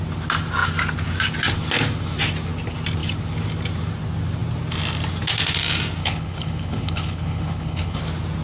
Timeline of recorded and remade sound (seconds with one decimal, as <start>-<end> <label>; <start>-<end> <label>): 0.0-6.0 recorded; 6.0-8.0 remade; 8.0-8.4 recorded